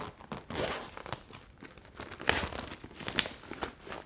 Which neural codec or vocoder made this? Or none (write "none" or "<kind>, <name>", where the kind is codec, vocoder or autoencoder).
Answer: none